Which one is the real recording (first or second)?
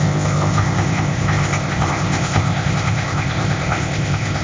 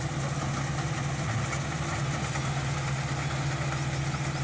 second